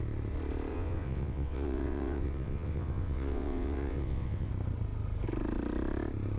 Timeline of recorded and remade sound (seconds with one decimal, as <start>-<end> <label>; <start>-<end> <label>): 0.0-0.7 recorded; 0.7-4.5 remade; 4.5-6.4 recorded